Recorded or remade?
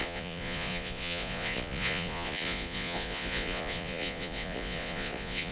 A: remade